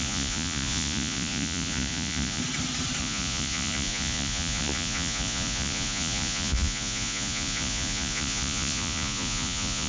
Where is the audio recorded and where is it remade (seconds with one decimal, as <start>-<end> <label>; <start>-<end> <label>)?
0.0-2.4 remade; 2.4-3.0 recorded; 3.0-9.9 remade